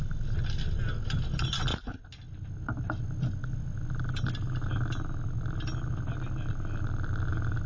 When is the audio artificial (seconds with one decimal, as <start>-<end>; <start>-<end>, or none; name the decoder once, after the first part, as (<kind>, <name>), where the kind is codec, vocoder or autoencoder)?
none